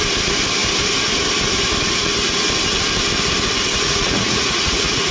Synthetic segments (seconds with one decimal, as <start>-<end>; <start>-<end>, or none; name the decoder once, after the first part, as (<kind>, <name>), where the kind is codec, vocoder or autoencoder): 3.7-5.1 (vocoder, Vocos)